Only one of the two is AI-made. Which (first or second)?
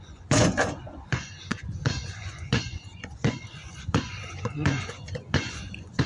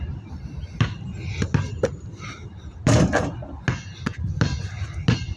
first